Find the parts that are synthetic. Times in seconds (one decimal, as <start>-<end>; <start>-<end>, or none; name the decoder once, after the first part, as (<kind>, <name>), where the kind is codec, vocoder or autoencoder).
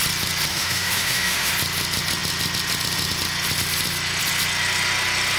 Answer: 0.5-1.5 (autoencoder, DAC-VAE)